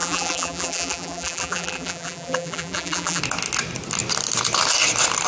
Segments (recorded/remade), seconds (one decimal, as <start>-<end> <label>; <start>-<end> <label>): 0.0-3.2 remade; 3.2-5.3 recorded